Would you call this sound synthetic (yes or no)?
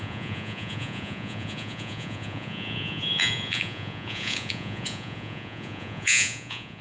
yes